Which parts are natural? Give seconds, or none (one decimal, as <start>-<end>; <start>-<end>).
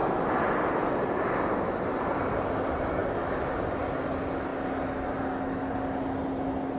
0.0-6.8